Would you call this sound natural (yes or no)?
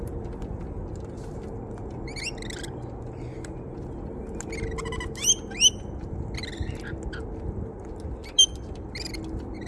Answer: yes